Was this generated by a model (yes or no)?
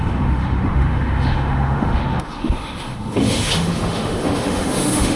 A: yes